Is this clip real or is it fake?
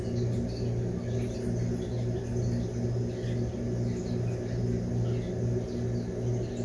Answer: real